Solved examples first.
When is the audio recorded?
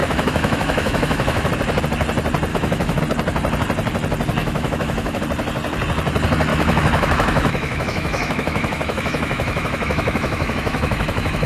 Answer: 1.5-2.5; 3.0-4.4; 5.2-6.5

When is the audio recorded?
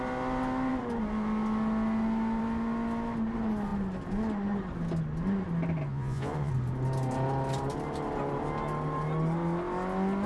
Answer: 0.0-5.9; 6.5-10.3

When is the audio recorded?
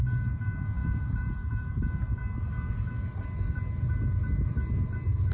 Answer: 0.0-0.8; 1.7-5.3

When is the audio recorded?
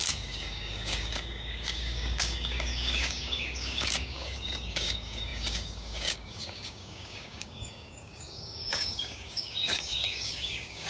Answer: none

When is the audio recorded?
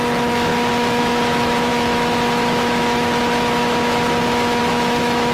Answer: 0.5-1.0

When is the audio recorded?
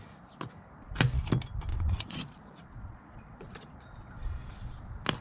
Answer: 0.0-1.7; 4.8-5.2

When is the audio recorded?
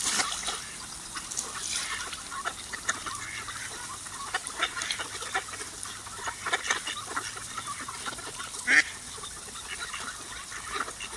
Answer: 0.0-11.2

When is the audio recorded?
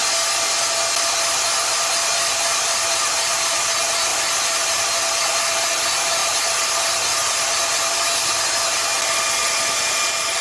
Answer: 0.0-10.4